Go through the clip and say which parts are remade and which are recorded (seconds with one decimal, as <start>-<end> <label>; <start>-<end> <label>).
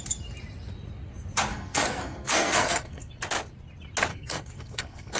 0.0-1.5 recorded; 1.5-3.1 remade; 3.1-4.1 recorded; 4.1-5.2 remade